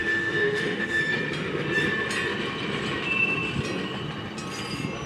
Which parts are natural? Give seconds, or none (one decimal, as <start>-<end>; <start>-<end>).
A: 1.0-5.1

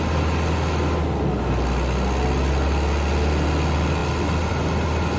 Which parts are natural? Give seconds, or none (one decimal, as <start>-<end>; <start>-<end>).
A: 0.0-5.2